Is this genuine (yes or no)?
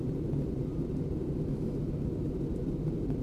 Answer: no